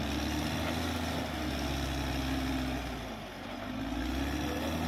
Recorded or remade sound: recorded